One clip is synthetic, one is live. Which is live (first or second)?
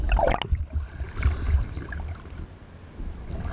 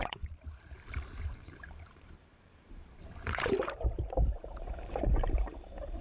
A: first